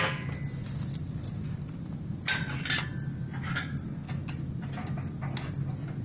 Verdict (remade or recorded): recorded